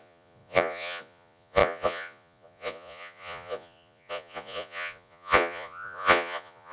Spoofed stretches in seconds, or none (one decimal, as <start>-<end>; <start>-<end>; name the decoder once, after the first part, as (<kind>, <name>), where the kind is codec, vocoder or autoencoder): 0.0-6.7 (vocoder, Vocos)